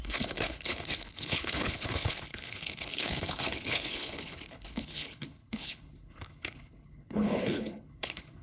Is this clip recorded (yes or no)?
no